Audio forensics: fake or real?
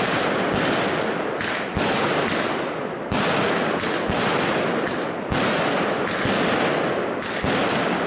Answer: real